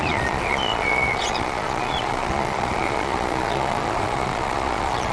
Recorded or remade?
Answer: remade